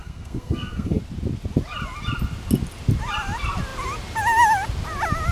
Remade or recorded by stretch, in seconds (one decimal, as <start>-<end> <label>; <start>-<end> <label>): 0.0-1.0 remade; 1.0-5.3 recorded